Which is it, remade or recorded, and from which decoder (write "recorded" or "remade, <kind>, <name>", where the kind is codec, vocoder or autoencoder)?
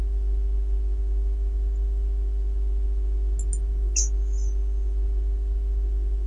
recorded